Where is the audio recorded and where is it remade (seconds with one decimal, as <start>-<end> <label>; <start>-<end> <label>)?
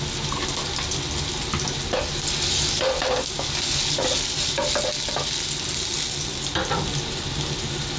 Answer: 0.0-8.0 recorded